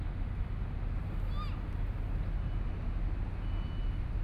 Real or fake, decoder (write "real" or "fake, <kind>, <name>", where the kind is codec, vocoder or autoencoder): real